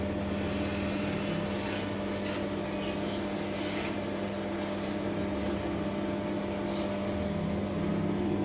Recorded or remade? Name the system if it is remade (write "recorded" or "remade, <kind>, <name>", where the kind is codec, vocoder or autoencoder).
recorded